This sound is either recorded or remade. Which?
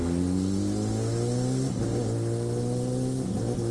recorded